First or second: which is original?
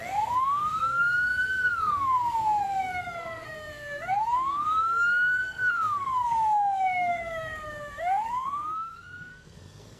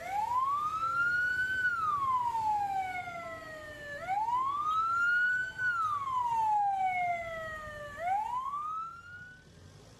second